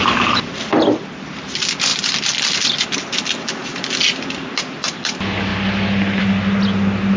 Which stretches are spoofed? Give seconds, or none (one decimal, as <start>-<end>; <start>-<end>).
none